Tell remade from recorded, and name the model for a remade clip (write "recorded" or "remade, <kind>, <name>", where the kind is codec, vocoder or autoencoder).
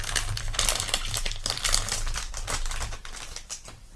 recorded